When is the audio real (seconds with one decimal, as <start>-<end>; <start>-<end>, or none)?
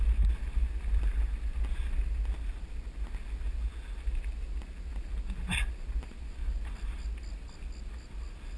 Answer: 0.0-8.6